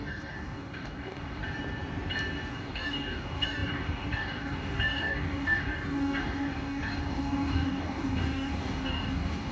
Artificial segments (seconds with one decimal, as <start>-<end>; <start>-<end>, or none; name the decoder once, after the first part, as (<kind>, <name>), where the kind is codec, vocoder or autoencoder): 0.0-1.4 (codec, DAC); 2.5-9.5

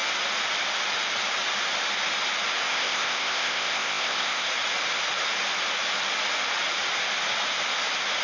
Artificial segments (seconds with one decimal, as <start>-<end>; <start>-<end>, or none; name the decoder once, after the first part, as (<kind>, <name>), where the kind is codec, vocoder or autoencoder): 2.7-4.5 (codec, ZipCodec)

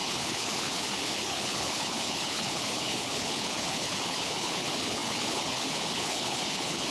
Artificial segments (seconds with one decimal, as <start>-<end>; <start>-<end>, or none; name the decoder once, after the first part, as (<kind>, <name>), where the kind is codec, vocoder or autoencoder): 0.0-6.9 (codec, HILCodec)